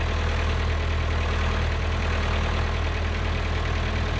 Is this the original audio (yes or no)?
yes